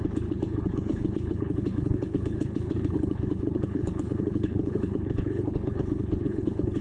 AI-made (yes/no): yes